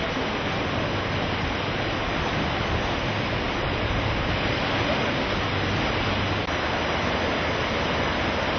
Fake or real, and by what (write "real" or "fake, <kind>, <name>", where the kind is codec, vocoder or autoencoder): real